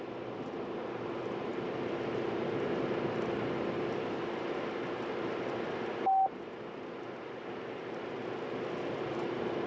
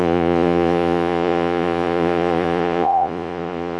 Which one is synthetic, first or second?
second